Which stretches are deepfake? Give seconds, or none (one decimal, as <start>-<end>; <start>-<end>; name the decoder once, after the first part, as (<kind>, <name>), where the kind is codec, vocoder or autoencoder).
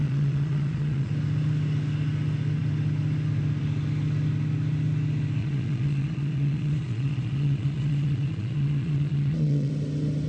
0.0-1.1 (vocoder, Vocos); 5.4-9.7